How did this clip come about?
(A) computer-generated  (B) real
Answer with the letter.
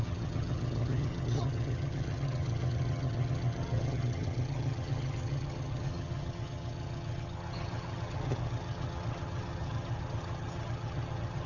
A